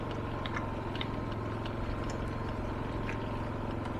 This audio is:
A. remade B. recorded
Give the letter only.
B